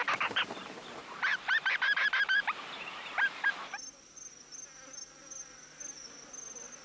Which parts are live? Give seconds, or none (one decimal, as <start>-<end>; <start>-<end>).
0.0-1.0; 3.5-6.8